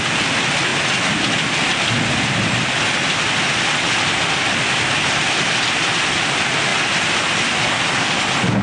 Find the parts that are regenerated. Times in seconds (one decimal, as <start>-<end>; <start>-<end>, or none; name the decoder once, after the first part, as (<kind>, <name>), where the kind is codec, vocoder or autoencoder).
none